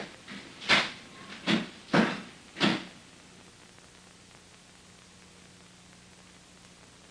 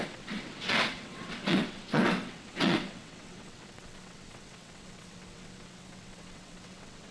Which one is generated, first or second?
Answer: second